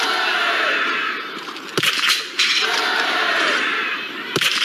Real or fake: fake